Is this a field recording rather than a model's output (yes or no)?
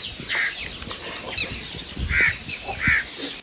yes